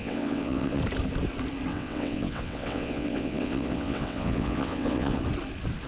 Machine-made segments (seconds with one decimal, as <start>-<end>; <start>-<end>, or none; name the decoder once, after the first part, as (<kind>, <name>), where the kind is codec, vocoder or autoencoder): 0.0-0.8 (vocoder, WaveNeXt); 1.7-5.2